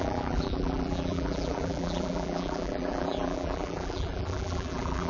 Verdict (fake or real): fake